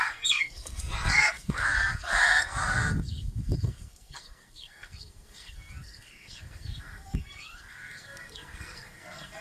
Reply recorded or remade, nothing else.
remade